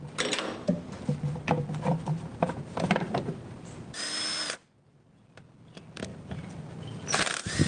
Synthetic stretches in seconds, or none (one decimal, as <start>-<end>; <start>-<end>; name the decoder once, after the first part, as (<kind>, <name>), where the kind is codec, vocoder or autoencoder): 2.1-3.9 (vocoder, BigVGAN v2); 6.1-7.7